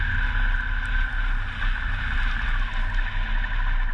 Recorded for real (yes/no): yes